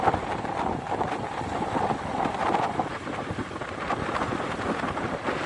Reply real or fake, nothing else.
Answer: real